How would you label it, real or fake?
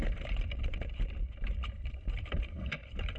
fake